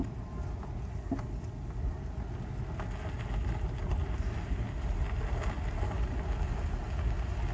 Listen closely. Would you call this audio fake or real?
real